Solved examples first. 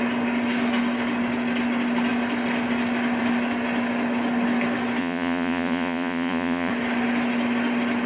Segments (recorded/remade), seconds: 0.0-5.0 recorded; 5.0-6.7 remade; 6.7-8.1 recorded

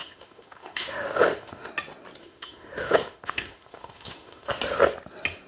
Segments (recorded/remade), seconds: 0.0-1.7 remade; 1.7-2.2 recorded; 2.2-4.6 remade; 4.6-5.5 recorded

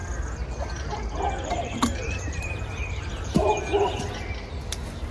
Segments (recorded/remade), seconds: 0.0-3.1 remade; 3.1-5.1 recorded

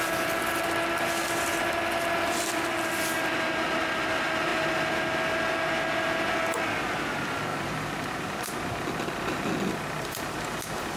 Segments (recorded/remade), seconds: 0.0-7.5 recorded; 7.5-8.1 remade; 8.1-11.0 recorded